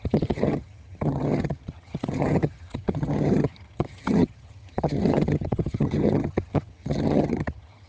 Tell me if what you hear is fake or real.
fake